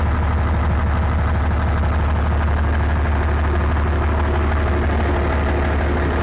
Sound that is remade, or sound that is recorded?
recorded